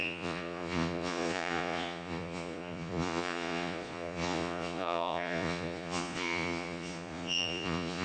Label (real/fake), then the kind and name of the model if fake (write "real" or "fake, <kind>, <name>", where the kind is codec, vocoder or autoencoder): fake, vocoder, Vocos